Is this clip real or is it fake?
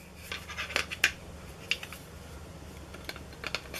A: real